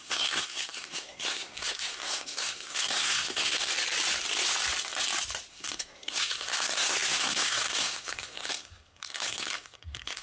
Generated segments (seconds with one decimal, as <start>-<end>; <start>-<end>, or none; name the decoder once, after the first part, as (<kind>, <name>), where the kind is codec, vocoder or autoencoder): 0.0-3.7 (codec, SNAC); 5.5-10.2